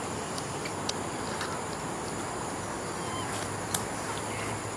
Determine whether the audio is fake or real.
real